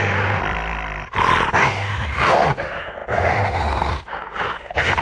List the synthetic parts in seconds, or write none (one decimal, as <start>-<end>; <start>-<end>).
0.0-0.4; 1.5-5.0